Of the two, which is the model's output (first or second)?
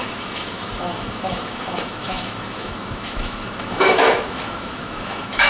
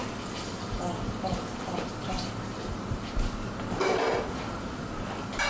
first